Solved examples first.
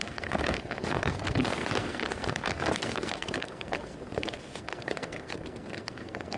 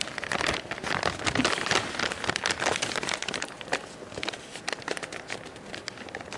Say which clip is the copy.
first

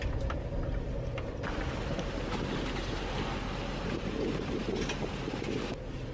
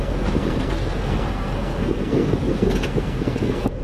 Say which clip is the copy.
second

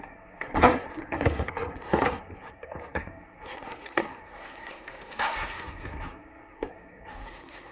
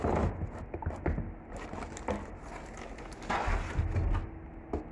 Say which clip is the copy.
first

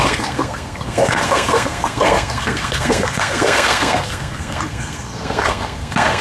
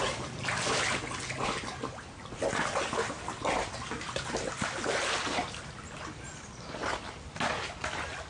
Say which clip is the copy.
first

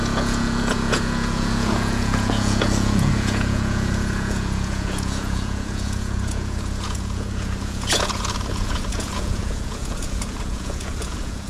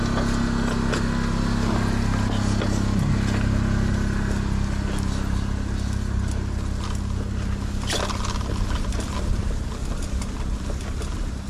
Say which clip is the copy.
first